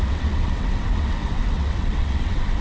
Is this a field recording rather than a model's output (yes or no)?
no